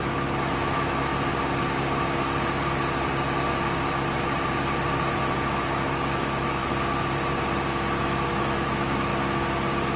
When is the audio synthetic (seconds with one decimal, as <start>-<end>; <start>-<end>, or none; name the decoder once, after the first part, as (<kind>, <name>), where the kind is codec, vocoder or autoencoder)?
0.0-1.1 (autoencoder, DAC-VAE); 5.4-6.6; 8.0-9.1